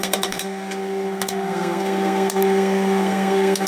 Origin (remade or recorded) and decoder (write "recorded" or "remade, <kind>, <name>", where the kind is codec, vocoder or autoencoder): remade, codec, SNAC